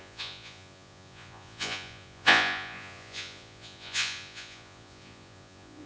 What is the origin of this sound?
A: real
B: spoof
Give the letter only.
B